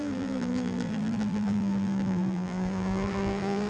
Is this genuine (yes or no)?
no